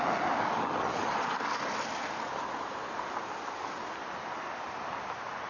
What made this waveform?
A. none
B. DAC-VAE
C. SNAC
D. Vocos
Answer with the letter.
A